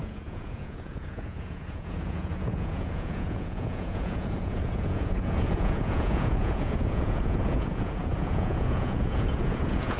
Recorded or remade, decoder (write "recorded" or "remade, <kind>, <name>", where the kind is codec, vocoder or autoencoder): remade, vocoder, Vocos